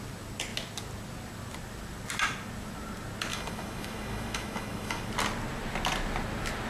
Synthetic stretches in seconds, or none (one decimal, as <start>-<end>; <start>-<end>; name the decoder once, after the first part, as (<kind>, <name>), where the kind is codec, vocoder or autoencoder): 3.3-5.1 (autoencoder, DAC-VAE)